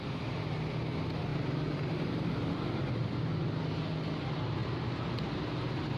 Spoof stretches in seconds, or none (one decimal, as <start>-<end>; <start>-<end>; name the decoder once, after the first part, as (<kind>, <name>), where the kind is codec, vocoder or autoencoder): 1.3-3.1 (vocoder, BigVGAN v2); 4.6-5.5